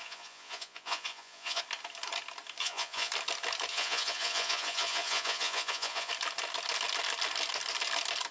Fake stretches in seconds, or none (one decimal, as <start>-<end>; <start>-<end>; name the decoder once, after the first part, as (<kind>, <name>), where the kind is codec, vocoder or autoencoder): 0.0-1.6 (vocoder, Vocos); 2.6-3.1; 3.7-6.1